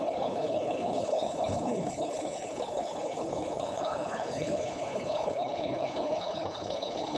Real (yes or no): no